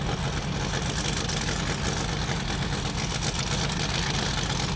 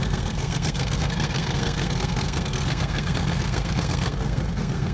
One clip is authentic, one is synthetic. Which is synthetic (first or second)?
second